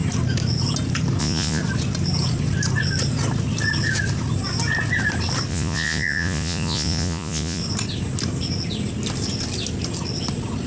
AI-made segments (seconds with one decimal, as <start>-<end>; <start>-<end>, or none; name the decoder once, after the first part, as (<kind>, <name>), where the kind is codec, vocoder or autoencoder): 1.2-1.6 (vocoder, Vocos); 5.5-7.6